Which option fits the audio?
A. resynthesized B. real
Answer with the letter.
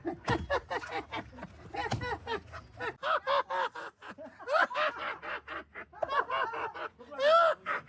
B